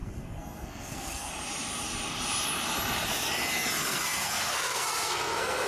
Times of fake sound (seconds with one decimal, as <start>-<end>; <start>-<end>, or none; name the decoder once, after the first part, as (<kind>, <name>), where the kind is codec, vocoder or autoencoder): 0.0-1.3 (codec, SNAC); 3.9-5.7